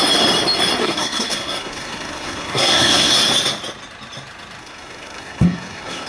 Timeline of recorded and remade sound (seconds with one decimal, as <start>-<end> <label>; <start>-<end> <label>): 0.0-0.8 recorded; 0.8-3.1 remade; 3.1-4.6 recorded; 4.6-6.1 remade